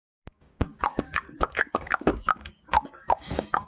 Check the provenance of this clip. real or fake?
fake